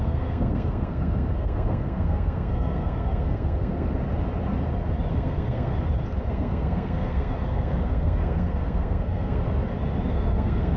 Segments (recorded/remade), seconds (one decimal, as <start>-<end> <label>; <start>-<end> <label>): 0.0-4.0 remade; 4.0-5.1 recorded; 5.1-5.7 remade; 5.7-6.3 recorded; 6.3-9.4 remade; 9.4-10.1 recorded; 10.1-10.8 remade